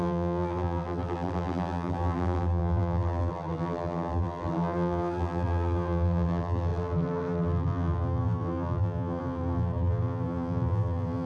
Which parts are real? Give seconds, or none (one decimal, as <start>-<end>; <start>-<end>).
none